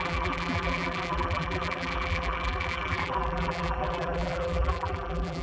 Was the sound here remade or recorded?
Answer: remade